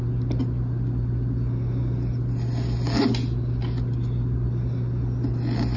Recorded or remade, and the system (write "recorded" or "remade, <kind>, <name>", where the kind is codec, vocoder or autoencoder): recorded